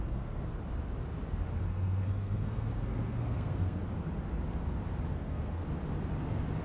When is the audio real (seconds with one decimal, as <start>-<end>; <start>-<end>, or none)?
0.5-1.6; 3.8-5.1; 5.6-6.6